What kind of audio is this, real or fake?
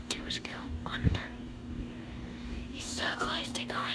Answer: fake